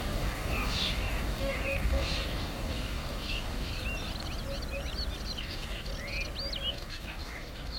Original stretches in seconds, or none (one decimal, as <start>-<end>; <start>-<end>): 3.7-5.4; 5.9-6.7